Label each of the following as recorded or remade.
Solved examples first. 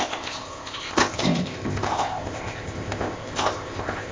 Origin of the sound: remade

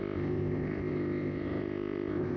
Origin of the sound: remade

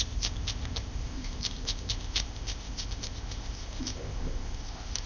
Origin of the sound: remade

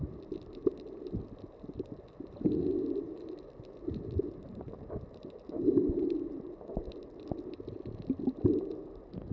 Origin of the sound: recorded